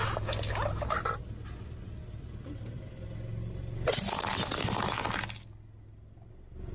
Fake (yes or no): no